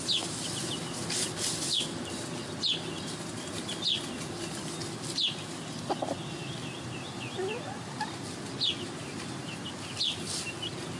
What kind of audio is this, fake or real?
real